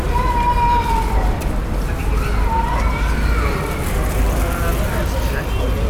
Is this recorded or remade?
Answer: recorded